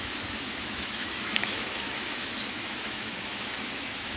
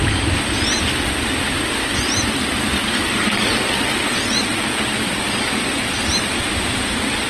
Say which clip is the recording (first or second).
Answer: second